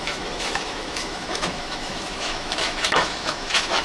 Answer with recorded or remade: remade